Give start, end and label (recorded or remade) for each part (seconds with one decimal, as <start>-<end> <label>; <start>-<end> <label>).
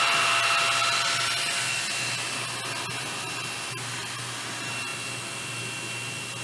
0.0-6.4 recorded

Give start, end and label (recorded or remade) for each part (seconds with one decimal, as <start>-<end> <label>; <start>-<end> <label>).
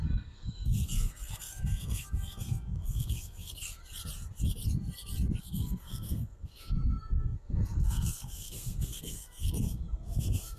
0.0-3.8 remade; 3.8-5.4 recorded; 5.4-10.6 remade